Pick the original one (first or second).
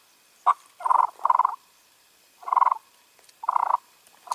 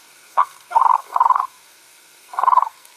first